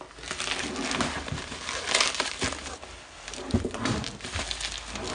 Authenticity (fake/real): real